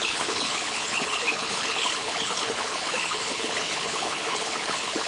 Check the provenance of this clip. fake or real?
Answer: fake